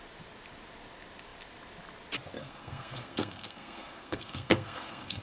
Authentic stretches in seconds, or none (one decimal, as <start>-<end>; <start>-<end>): 0.0-2.4